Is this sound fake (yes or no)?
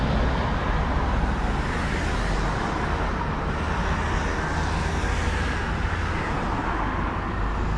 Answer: no